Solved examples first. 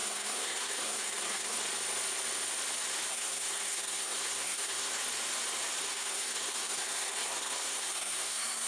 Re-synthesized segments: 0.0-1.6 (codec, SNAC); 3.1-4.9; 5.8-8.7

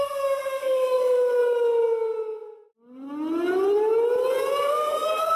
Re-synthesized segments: 0.0-1.4 (codec, SNAC); 4.6-5.4